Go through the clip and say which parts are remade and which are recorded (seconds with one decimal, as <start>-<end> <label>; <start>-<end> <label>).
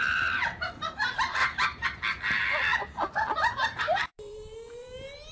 0.0-1.4 remade; 1.4-3.8 recorded; 3.8-5.3 remade